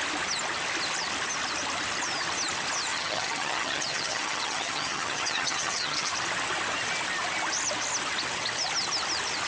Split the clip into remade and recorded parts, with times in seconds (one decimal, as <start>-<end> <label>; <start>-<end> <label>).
0.0-2.9 recorded; 2.9-6.1 remade; 6.1-9.5 recorded

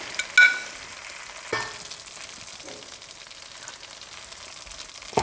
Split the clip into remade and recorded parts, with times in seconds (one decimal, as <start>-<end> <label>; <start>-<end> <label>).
0.0-5.2 recorded

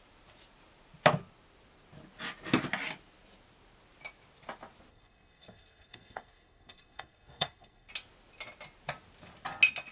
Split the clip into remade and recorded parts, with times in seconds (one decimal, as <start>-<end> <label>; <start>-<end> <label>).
0.0-4.9 recorded; 4.9-7.9 remade; 7.9-9.9 recorded

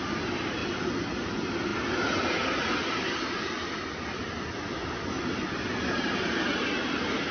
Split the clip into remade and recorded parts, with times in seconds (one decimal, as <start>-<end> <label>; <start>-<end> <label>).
0.0-0.6 remade; 0.6-1.2 recorded; 1.2-1.7 remade; 1.7-5.9 recorded; 5.9-7.3 remade

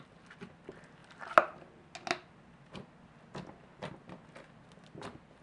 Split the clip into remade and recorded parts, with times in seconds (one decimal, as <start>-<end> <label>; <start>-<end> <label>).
0.0-5.4 recorded